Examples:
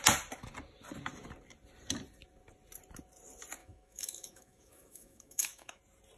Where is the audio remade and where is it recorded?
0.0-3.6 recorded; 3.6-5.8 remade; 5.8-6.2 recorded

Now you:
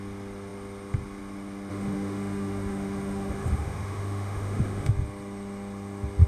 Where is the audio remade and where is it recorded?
0.0-1.7 recorded; 1.7-4.9 remade; 4.9-6.3 recorded